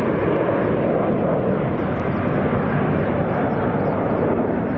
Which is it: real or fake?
real